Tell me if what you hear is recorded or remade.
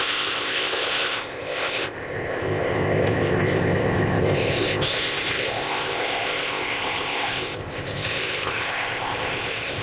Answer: remade